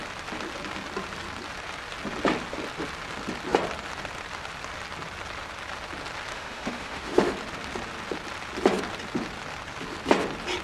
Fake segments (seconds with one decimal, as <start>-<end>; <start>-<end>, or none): 6.3-7.3